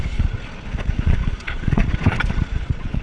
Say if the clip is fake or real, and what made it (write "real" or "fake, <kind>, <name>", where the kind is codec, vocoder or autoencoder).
fake, vocoder, Vocos